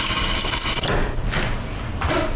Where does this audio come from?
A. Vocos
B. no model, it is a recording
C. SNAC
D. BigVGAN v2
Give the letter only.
B